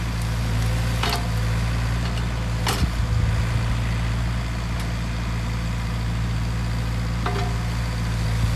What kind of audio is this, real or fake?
real